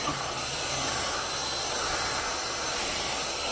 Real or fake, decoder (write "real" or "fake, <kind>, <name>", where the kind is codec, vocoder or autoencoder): real